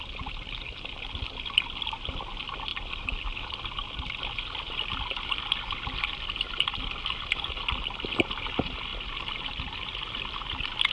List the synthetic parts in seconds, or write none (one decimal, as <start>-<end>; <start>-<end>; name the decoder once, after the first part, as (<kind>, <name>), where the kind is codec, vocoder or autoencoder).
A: none